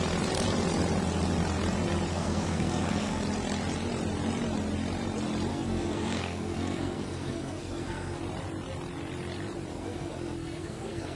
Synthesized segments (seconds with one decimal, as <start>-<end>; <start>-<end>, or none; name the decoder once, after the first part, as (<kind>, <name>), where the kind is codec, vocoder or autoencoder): 2.1-3.2 (codec, SNAC); 5.5-8.2; 9.7-11.2